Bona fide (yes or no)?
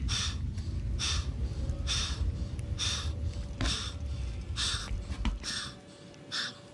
yes